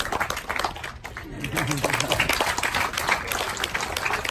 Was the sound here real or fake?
real